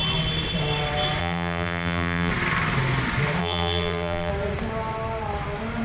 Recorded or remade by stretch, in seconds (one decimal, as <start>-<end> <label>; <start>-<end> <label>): 0.0-1.2 recorded; 1.2-2.3 remade; 2.3-3.4 recorded; 3.4-4.3 remade; 4.3-5.8 recorded